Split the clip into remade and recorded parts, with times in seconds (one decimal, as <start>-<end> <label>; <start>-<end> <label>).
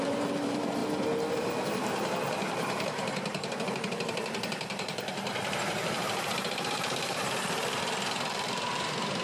0.0-0.8 remade; 0.8-1.3 recorded; 1.3-9.2 remade